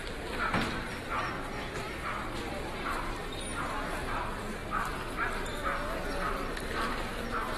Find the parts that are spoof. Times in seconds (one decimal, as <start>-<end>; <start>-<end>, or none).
4.6-5.1